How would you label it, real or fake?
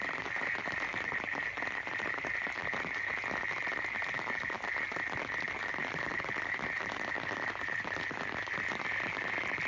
real